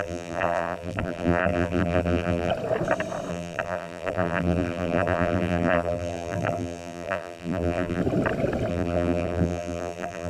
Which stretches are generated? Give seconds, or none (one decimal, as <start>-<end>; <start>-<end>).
0.0-2.5; 3.3-8.0; 8.7-10.3